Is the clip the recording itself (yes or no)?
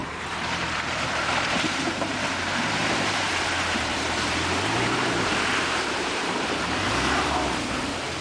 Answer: no